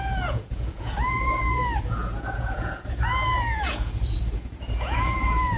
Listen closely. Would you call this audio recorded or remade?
remade